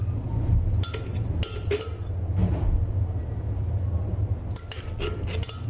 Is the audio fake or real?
real